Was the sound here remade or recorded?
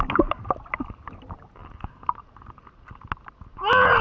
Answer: recorded